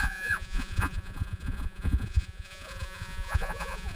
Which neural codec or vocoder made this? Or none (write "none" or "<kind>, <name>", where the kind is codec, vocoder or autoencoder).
vocoder, Vocos